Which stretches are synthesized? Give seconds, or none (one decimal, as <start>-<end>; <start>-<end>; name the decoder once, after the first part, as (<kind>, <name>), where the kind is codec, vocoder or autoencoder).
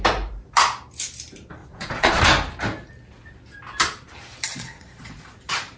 1.6-2.2 (vocoder, Vocos); 4.5-5.3